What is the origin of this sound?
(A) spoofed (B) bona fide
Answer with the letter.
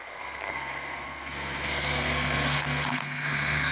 A